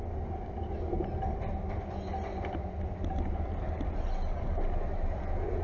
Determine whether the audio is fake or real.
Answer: real